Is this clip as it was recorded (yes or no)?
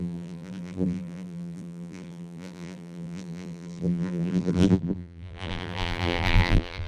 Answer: no